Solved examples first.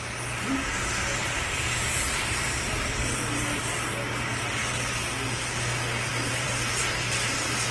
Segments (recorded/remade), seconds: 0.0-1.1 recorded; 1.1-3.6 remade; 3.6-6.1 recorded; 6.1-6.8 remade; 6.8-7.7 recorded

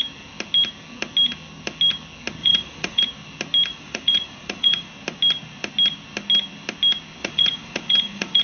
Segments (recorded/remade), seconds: 0.0-2.4 recorded; 2.4-3.0 remade; 3.0-3.7 recorded; 3.7-4.9 remade; 4.9-7.2 recorded; 7.2-8.4 remade

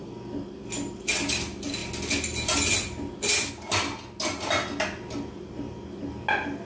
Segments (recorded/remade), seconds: 0.0-6.6 recorded

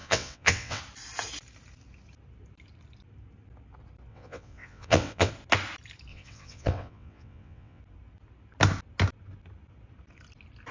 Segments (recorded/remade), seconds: 0.0-0.8 remade; 0.8-4.1 recorded; 4.1-5.3 remade; 5.3-6.1 recorded; 6.1-7.8 remade; 7.8-10.7 recorded